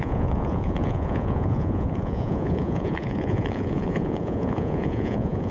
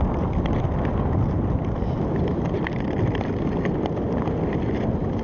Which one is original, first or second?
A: second